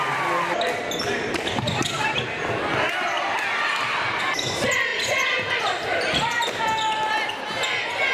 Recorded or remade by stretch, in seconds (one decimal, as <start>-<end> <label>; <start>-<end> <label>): 0.0-8.1 recorded